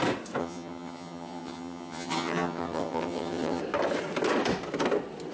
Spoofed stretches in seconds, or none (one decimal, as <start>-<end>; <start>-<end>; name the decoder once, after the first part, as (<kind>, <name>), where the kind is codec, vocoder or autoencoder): 0.4-3.6 (vocoder, HiFi-GAN)